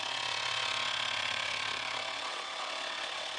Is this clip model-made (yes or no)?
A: yes